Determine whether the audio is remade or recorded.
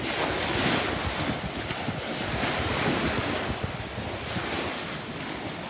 recorded